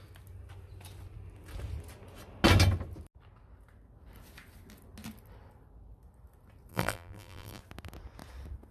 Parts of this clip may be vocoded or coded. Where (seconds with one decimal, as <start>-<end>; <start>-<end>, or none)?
6.7-7.6